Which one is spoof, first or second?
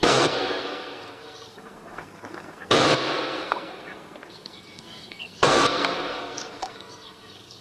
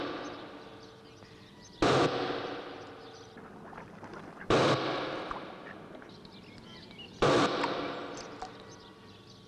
first